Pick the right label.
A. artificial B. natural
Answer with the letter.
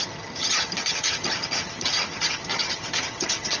A